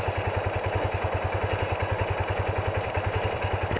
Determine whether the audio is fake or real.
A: real